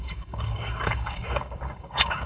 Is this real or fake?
fake